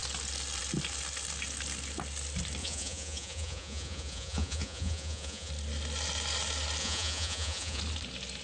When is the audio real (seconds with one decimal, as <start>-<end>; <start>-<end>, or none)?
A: 0.0-2.6; 5.5-6.8; 7.8-8.4